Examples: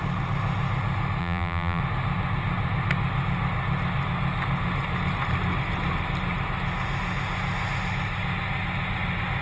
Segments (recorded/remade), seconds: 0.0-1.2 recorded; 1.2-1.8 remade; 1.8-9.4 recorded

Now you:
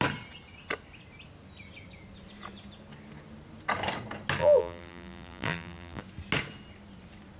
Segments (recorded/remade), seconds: 0.0-4.4 recorded; 4.4-6.0 remade; 6.0-7.4 recorded

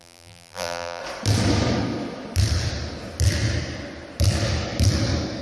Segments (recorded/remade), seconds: 0.0-1.0 remade; 1.0-5.4 recorded

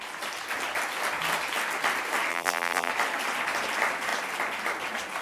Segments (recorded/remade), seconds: 0.0-2.3 recorded; 2.3-2.9 remade; 2.9-5.2 recorded

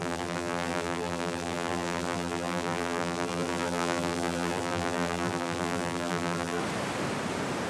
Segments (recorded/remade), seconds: 0.0-6.6 remade; 6.6-7.7 recorded

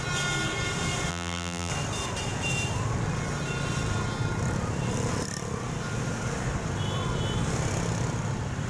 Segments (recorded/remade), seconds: 0.0-1.1 recorded; 1.1-1.7 remade; 1.7-8.7 recorded

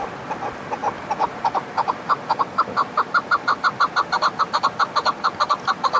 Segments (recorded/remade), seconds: 0.0-6.0 recorded

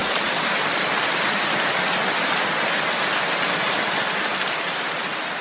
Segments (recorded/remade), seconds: 0.0-1.4 remade; 1.4-5.4 recorded